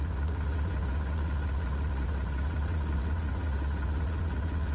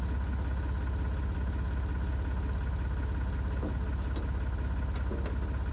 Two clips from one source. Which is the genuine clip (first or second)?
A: second